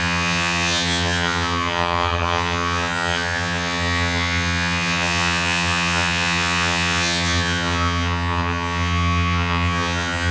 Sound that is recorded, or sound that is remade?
remade